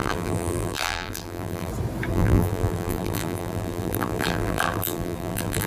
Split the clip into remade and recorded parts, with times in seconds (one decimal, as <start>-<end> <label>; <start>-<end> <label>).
0.0-1.7 remade; 1.7-2.1 recorded; 2.1-5.7 remade